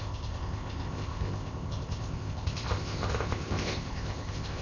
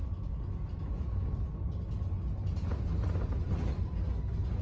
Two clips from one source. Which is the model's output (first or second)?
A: first